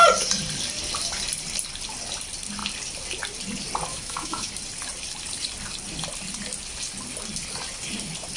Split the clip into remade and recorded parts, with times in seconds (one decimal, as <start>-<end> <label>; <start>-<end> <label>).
0.0-3.9 recorded; 3.9-4.5 remade; 4.5-8.4 recorded